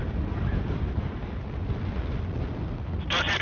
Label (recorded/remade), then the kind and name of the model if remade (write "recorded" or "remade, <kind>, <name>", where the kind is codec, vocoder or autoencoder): recorded